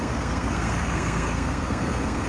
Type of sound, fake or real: fake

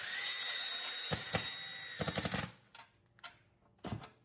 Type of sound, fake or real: real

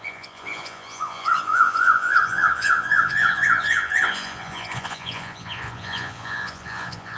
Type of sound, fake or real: fake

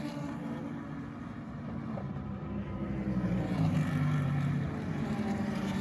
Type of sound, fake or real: fake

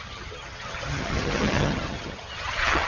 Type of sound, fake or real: fake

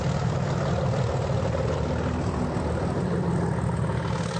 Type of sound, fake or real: real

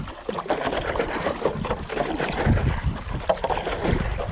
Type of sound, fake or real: real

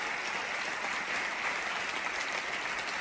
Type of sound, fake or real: real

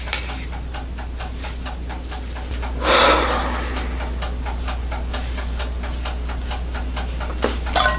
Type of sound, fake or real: real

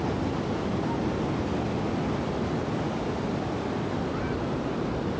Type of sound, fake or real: real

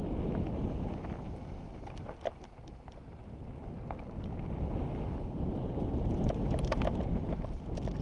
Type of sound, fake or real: real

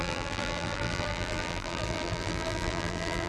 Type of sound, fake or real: fake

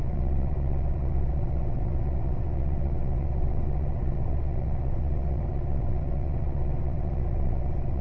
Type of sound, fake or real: fake